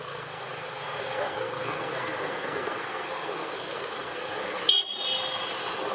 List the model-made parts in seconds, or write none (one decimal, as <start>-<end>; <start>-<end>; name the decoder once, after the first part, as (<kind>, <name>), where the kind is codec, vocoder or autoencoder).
0.0-4.6 (codec, SNAC)